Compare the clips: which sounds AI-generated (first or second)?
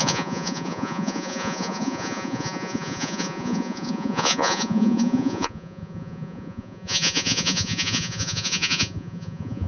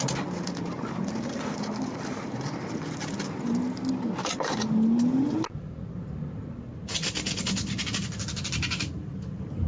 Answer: first